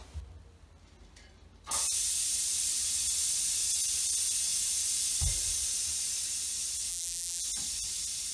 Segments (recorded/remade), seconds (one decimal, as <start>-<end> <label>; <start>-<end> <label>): 0.0-6.9 recorded; 6.9-7.4 remade; 7.4-8.3 recorded